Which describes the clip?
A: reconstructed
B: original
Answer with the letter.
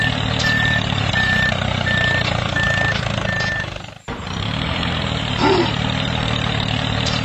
A